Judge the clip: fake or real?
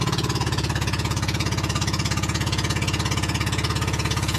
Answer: fake